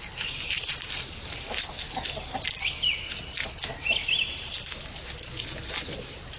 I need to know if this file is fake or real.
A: real